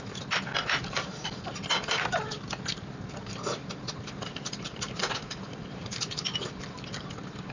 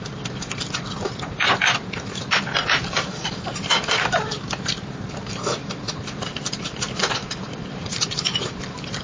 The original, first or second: first